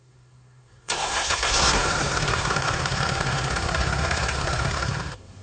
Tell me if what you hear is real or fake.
fake